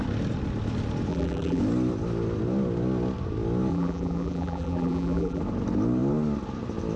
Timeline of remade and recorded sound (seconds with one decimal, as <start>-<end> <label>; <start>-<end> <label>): 0.0-1.1 recorded; 1.1-1.6 remade; 1.6-3.7 recorded; 3.7-5.4 remade; 5.4-7.0 recorded